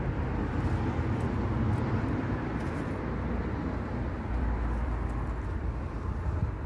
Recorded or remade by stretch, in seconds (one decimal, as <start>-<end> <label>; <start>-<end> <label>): 0.0-2.5 remade; 2.5-3.9 recorded; 3.9-6.7 remade